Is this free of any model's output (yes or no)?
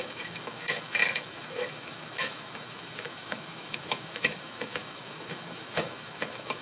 no